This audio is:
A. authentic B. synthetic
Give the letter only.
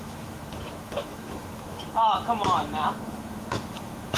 B